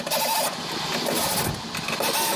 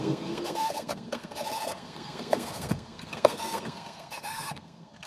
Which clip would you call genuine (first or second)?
first